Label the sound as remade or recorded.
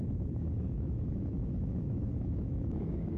remade